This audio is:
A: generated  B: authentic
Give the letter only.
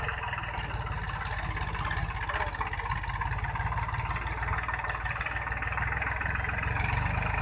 B